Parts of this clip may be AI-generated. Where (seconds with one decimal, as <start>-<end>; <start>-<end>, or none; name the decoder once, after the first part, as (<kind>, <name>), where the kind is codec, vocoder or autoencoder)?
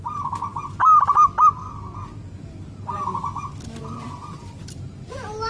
none